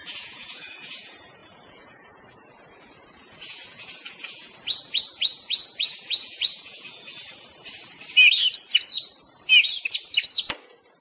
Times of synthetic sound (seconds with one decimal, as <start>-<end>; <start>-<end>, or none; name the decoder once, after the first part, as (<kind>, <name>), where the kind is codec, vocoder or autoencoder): 0.0-7.1 (vocoder, Vocos); 10.6-11.0